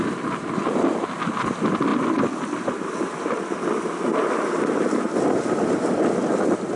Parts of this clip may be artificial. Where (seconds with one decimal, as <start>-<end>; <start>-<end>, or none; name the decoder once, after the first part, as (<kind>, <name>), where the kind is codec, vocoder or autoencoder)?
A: none